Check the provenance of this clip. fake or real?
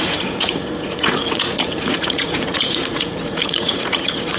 fake